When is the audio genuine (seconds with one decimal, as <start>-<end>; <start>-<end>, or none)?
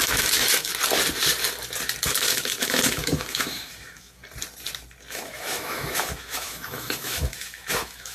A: 0.7-2.1; 4.2-5.1